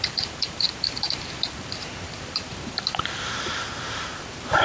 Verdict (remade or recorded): remade